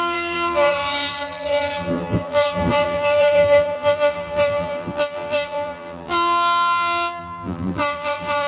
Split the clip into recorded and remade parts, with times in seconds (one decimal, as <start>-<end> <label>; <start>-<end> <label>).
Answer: 0.0-8.5 remade